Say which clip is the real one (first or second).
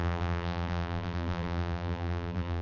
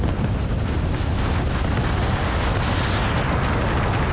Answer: second